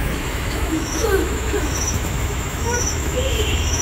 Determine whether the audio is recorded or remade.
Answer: remade